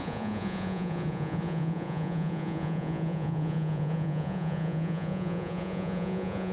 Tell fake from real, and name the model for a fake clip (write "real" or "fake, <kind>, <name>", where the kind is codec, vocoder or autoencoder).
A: fake, vocoder, Vocos